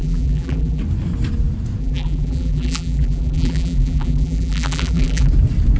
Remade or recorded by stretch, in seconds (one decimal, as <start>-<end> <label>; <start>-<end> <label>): 0.0-0.8 remade; 0.8-1.8 recorded; 1.8-5.3 remade; 5.3-5.8 recorded